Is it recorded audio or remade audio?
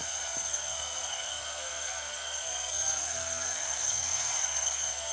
remade